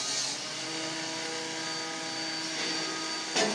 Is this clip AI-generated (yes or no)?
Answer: no